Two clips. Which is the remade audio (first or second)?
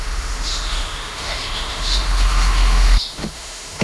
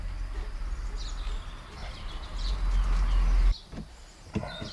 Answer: first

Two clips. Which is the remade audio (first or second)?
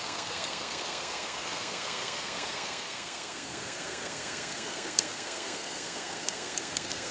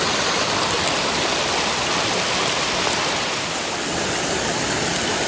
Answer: first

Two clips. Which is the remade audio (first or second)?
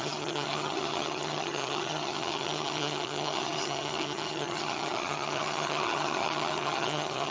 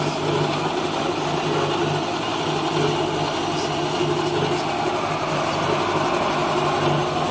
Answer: first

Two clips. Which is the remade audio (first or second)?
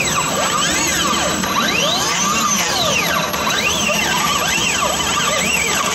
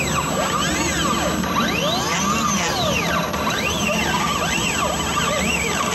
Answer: first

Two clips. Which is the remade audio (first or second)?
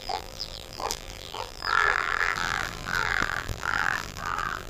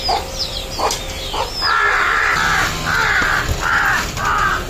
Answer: first